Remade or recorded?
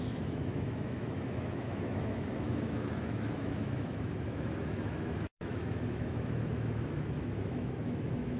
remade